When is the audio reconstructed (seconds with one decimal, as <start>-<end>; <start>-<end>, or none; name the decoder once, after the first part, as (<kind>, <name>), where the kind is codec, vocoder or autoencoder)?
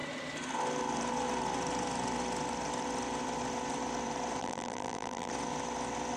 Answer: 4.4-5.3 (vocoder, BigVGAN v2)